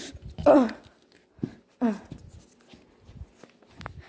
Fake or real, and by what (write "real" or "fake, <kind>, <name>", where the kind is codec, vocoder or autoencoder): real